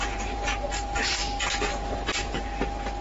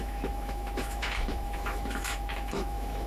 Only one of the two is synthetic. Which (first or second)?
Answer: second